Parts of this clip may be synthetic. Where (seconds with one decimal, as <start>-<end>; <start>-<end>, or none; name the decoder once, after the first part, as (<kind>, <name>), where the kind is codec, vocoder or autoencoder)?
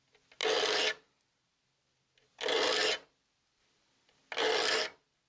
none